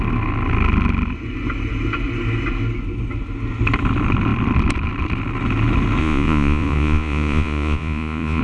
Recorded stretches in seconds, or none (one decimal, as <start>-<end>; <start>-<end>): 0.0-6.0